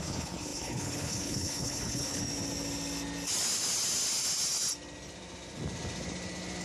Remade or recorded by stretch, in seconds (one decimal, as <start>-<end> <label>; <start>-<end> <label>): 0.0-2.2 remade; 2.2-6.6 recorded